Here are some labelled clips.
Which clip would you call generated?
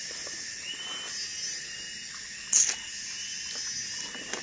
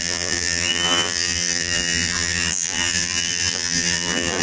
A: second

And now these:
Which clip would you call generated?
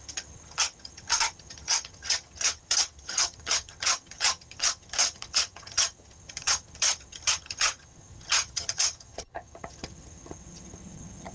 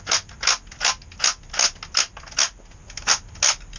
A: first